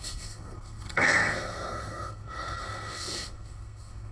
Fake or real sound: fake